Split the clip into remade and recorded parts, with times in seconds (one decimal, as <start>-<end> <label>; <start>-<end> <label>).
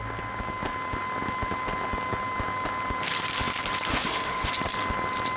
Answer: 0.0-3.9 recorded; 3.9-4.5 remade; 4.5-5.4 recorded